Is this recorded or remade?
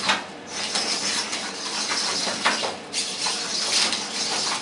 recorded